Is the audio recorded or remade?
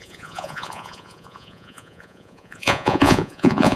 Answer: remade